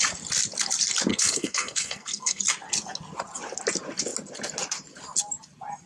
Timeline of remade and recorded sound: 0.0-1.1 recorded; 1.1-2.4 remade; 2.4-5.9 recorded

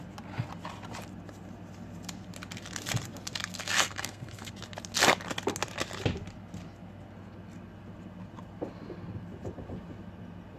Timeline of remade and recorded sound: 0.0-3.6 recorded; 3.6-4.5 remade; 4.5-10.6 recorded

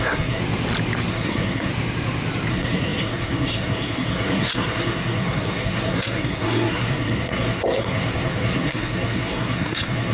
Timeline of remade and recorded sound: 0.0-0.4 remade; 0.4-1.1 recorded; 1.1-1.7 remade; 1.7-2.5 recorded; 2.5-10.1 remade